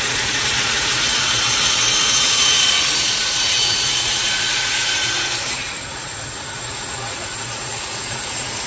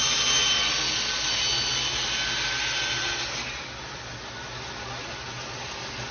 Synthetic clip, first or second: first